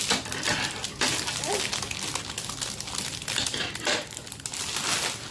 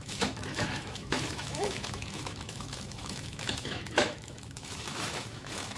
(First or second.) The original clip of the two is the first